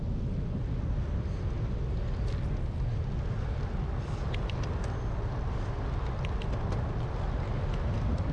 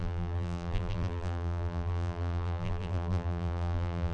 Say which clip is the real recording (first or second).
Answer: first